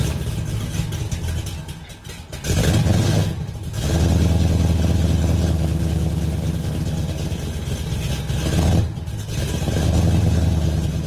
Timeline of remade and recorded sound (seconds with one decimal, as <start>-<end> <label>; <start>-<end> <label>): 0.0-11.1 recorded